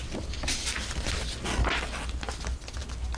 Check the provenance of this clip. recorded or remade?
recorded